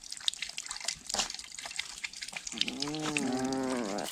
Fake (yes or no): no